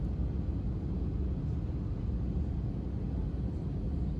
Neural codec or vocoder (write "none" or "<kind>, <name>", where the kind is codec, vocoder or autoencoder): none